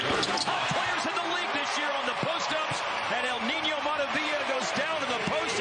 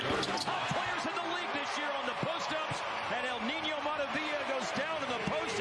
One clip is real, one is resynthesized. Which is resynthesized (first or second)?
first